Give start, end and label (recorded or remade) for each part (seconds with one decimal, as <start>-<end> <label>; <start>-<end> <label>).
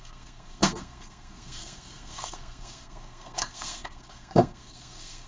0.0-5.3 remade